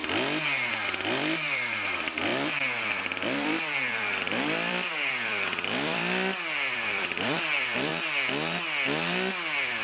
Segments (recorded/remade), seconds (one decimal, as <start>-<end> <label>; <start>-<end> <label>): 0.0-0.7 recorded; 0.7-7.9 remade; 7.9-9.3 recorded; 9.3-9.8 remade